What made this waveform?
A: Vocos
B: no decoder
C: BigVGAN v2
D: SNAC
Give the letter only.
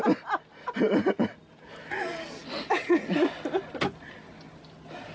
B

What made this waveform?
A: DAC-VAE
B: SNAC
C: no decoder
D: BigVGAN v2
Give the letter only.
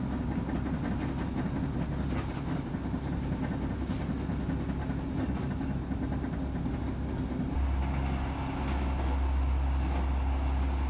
C